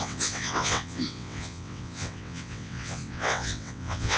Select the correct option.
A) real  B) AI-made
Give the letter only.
B